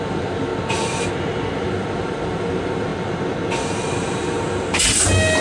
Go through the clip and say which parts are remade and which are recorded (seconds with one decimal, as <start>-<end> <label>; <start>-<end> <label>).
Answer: 0.0-0.5 remade; 0.5-1.7 recorded; 1.7-2.9 remade; 2.9-3.8 recorded; 3.8-5.4 remade